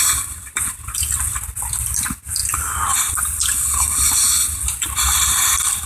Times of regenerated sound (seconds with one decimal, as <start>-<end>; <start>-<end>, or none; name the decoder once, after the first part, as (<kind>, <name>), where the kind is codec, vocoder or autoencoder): none